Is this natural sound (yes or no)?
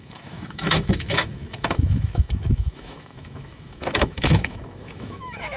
no